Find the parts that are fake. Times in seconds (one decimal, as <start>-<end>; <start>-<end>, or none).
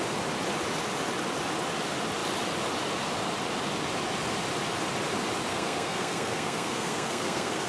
5.5-7.7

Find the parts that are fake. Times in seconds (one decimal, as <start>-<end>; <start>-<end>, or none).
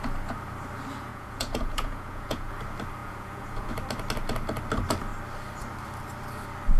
1.1-2.5; 3.0-3.7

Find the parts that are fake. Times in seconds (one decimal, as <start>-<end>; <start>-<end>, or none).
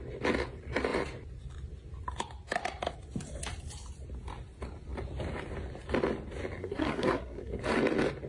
6.6-7.6